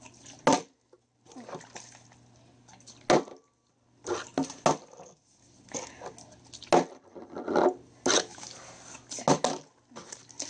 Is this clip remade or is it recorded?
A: recorded